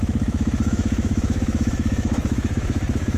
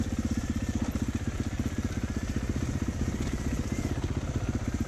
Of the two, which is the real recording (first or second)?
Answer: second